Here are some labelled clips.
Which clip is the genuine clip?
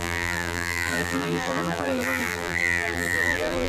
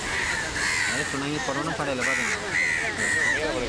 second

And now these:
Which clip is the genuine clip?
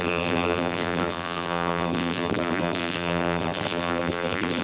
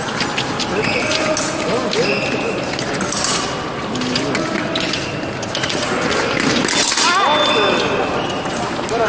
second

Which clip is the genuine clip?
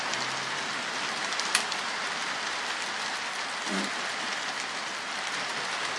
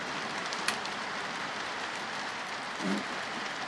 first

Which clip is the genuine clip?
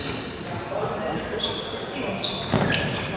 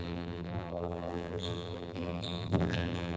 first